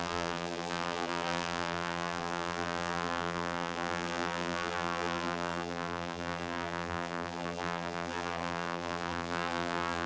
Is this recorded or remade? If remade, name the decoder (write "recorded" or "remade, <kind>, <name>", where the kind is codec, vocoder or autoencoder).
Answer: remade, vocoder, BigVGAN v2